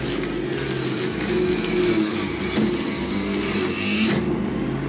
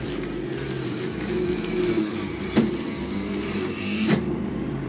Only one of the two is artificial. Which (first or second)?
second